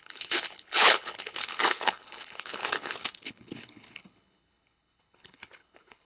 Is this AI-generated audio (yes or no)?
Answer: yes